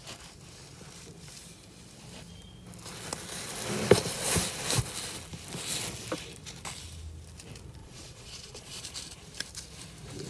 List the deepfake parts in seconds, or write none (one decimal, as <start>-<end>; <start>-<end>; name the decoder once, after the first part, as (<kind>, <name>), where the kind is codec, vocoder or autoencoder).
7.8-8.8 (vocoder, Vocos)